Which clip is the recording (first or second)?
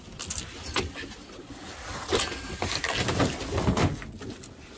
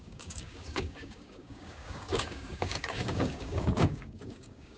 first